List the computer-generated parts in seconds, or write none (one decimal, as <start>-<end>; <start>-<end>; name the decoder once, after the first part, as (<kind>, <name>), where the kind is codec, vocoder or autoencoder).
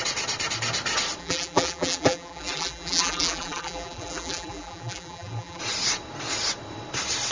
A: 1.2-5.6 (vocoder, BigVGAN v2)